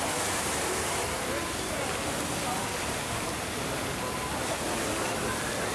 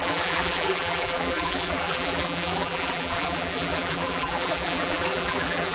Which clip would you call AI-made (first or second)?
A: second